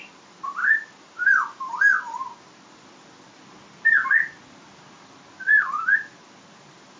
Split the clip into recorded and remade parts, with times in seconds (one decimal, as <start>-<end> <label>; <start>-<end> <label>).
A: 0.0-7.0 recorded